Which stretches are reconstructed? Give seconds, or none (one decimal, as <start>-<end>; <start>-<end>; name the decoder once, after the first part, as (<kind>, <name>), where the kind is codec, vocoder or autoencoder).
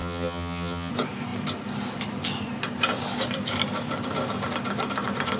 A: 0.0-0.9 (vocoder, HiFi-GAN)